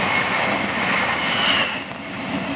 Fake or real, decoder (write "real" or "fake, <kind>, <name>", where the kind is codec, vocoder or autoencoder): real